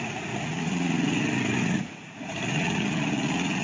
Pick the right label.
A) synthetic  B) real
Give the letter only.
A